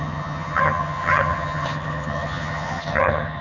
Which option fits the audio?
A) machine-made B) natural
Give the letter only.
A